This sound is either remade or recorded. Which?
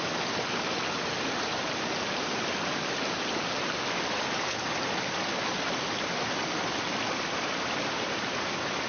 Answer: recorded